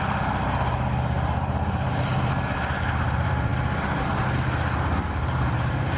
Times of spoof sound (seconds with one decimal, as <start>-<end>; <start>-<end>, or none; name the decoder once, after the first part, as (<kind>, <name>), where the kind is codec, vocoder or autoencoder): 0.0-3.5 (vocoder, BigVGAN v2); 5.1-6.0